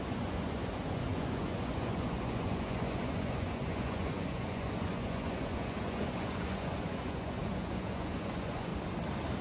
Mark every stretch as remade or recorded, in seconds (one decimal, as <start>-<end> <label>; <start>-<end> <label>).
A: 0.0-8.7 remade; 8.7-9.4 recorded